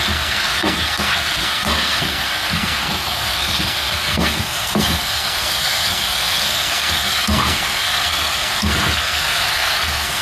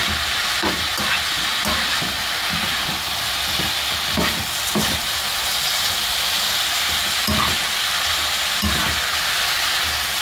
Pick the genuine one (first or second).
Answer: second